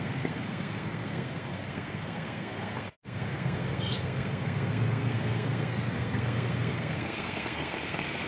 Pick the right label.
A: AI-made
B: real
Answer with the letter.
A